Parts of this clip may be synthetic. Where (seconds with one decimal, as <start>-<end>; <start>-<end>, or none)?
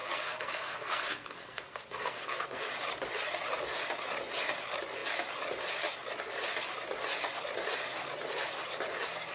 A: 0.0-2.7